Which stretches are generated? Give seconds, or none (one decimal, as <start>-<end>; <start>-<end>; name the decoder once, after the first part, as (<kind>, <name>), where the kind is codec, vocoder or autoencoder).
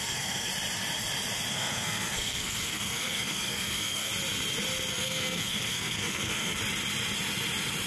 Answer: 0.0-0.5 (codec, SNAC); 1.5-4.1; 4.9-6.6